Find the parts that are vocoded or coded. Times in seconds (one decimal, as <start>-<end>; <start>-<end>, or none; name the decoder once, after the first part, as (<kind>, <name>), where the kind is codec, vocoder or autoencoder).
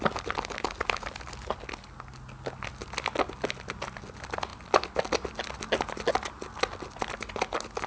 none